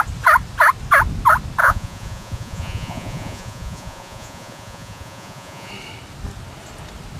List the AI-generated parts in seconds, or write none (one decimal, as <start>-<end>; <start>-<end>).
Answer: 1.6-5.7